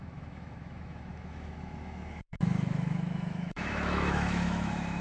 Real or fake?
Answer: fake